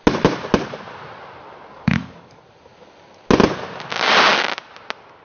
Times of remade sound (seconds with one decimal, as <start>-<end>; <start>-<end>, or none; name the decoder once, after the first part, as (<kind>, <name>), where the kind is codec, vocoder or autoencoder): 1.7-2.4 (codec, DAC)